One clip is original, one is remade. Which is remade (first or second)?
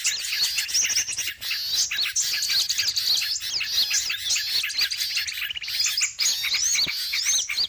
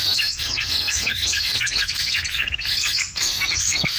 second